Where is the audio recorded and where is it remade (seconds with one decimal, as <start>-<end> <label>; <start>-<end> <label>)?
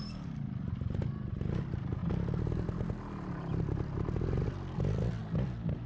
0.0-5.9 recorded